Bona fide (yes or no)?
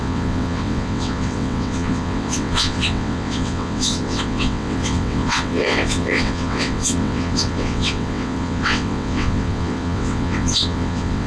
no